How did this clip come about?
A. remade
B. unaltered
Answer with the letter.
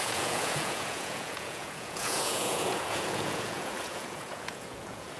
A